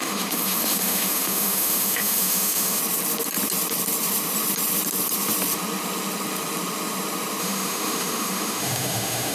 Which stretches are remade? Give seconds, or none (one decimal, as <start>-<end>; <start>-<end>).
0.0-2.8; 7.4-9.3